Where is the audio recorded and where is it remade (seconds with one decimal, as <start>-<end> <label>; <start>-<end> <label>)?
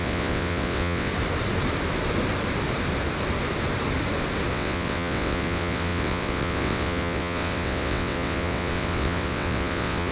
0.0-1.1 remade; 1.1-4.5 recorded; 4.5-10.1 remade